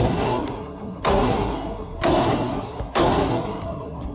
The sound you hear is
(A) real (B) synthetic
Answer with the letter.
B